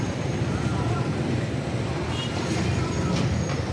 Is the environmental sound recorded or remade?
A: remade